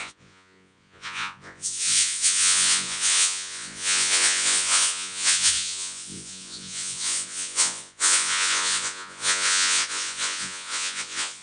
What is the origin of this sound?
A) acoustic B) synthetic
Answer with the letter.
B